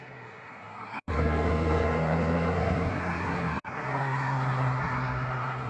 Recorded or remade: remade